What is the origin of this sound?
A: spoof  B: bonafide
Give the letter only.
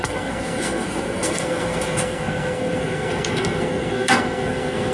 A